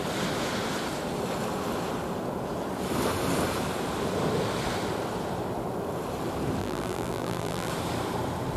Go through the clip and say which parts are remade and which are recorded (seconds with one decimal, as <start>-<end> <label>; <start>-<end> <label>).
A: 0.0-6.6 recorded; 6.6-7.7 remade; 7.7-8.6 recorded

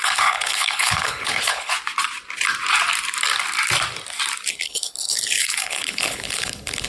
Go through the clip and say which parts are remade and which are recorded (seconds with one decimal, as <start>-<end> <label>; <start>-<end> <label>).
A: 0.0-1.7 remade; 1.7-4.5 recorded; 4.5-6.9 remade

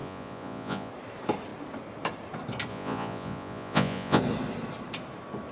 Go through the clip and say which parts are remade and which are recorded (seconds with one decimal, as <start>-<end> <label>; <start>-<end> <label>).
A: 0.0-0.9 remade; 0.9-2.7 recorded; 2.7-4.2 remade; 4.2-5.5 recorded

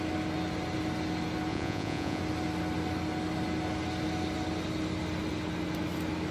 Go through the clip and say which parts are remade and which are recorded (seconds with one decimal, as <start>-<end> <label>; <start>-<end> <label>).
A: 0.0-1.5 recorded; 1.5-2.2 remade; 2.2-6.3 recorded

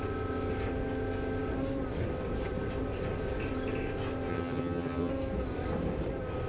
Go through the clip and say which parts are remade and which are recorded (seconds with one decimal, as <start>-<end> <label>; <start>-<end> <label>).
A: 0.0-4.3 recorded; 4.3-5.1 remade; 5.1-6.5 recorded

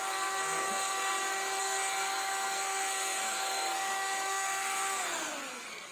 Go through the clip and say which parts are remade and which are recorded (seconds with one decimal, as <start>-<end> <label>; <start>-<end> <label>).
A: 0.0-1.1 remade; 1.1-1.6 recorded; 1.6-5.9 remade

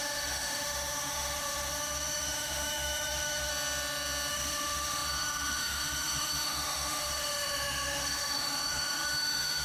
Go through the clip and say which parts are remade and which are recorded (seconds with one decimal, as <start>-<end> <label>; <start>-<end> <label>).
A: 0.0-3.5 remade; 3.5-4.3 recorded; 4.3-9.6 remade

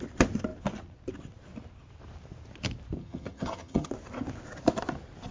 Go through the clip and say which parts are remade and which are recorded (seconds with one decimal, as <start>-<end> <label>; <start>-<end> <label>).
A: 0.0-3.0 recorded; 3.0-3.9 remade; 3.9-5.3 recorded